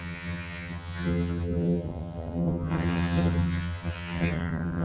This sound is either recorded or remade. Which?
remade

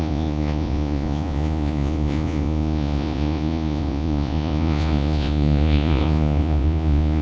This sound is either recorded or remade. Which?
remade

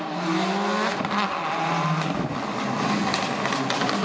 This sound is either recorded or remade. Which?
recorded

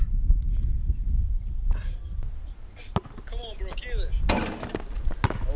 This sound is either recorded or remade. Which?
recorded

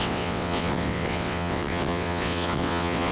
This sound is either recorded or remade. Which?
remade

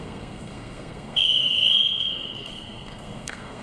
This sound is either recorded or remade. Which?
remade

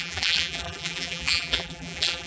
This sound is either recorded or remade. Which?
remade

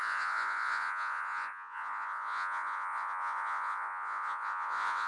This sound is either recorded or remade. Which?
remade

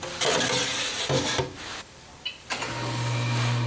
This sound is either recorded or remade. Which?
remade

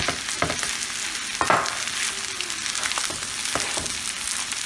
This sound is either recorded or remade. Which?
recorded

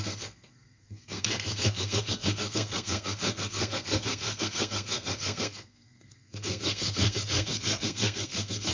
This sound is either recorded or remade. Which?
remade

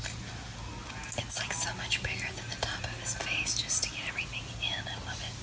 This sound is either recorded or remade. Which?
recorded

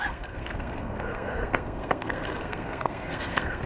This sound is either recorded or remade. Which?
remade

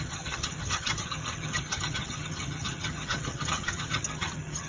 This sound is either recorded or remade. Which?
remade